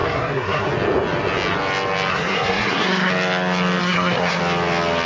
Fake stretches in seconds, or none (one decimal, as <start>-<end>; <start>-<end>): 0.0-0.7; 2.1-3.1; 3.8-4.4